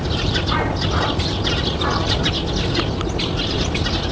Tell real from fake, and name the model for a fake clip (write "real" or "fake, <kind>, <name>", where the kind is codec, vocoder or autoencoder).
real